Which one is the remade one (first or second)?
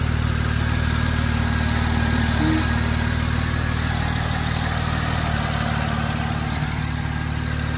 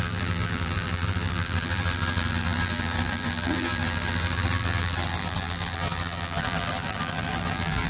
second